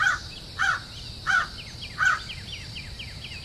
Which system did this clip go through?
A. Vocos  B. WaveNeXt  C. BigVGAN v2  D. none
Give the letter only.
D